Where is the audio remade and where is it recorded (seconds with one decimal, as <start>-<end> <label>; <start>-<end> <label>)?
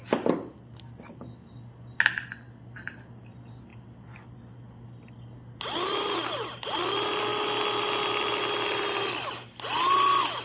0.0-10.4 recorded